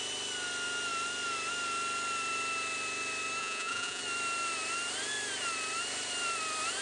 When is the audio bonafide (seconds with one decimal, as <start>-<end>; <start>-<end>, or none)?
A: 0.0-3.4; 4.0-6.8